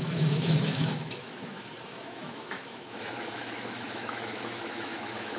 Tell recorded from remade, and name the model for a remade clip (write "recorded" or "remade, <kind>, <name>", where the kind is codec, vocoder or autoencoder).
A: remade, autoencoder, DAC-VAE